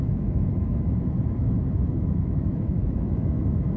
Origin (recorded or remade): remade